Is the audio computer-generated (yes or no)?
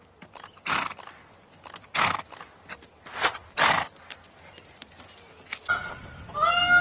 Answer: no